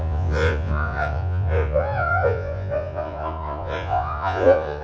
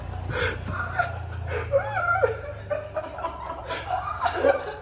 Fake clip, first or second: first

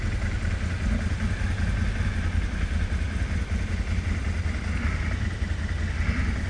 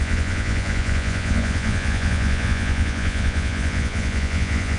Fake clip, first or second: second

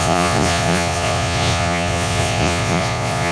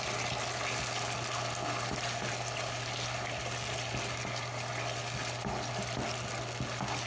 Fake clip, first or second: first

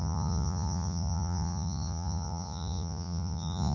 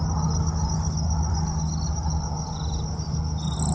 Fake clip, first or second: first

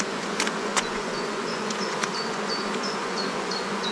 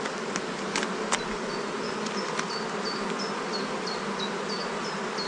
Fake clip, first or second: first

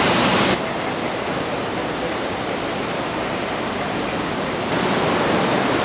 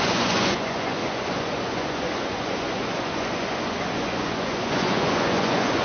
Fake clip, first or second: second